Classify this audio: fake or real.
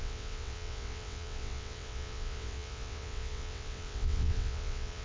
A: fake